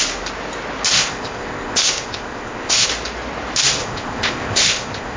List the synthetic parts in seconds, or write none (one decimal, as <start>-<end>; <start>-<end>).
0.9-2.9; 3.8-5.2